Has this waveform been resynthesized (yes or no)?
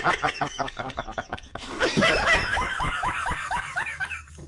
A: yes